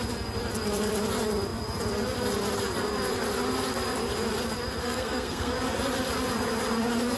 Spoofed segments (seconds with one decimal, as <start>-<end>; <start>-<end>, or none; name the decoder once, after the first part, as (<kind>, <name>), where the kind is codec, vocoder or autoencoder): 4.8-5.5 (codec, SNAC)